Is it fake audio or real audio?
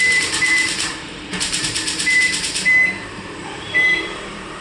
fake